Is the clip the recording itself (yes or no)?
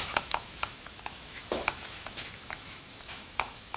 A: no